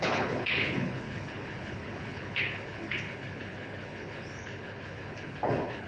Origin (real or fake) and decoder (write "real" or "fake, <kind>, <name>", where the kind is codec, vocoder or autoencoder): fake, codec, HILCodec